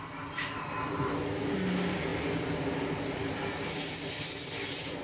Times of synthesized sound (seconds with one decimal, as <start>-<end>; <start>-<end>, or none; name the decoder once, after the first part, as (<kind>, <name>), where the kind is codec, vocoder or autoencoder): none